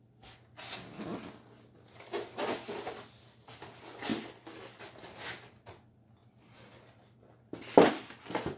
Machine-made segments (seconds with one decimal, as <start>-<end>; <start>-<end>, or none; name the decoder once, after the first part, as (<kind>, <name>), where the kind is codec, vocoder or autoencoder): none